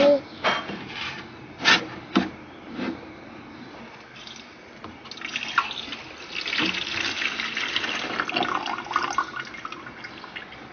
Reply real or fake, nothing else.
real